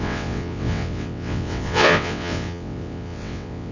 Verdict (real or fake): fake